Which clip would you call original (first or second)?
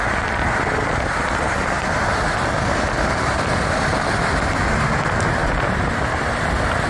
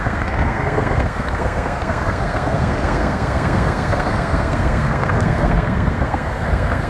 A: first